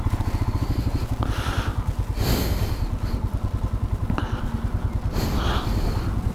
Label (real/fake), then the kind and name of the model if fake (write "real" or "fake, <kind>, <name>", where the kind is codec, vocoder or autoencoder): real